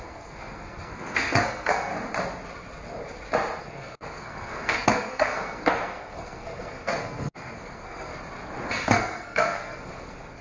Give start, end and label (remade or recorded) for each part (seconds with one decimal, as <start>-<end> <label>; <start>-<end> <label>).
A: 0.0-1.9 remade; 1.9-3.6 recorded; 3.6-8.1 remade; 8.1-8.7 recorded; 8.7-10.4 remade